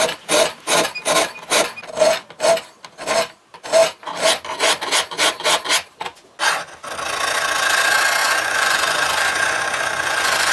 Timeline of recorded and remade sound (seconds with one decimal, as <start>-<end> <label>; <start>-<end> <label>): 0.0-8.2 recorded; 8.2-10.5 remade